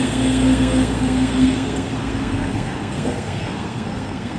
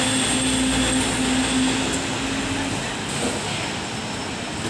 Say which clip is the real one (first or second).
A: second